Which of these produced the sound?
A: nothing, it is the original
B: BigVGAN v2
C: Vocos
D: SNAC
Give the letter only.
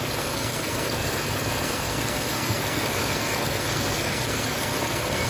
D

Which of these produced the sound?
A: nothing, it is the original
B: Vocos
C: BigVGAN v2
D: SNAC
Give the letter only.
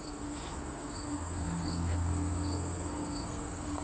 D